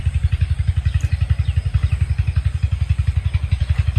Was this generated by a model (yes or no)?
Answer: no